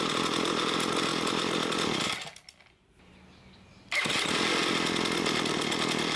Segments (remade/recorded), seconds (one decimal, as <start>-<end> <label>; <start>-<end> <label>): 0.0-1.1 recorded; 1.1-2.2 remade; 2.2-6.2 recorded